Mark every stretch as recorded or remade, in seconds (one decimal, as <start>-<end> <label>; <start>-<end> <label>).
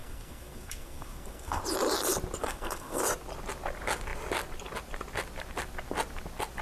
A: 0.0-1.6 remade; 1.6-2.4 recorded; 2.4-3.0 remade; 3.0-6.6 recorded